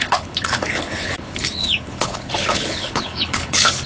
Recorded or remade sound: remade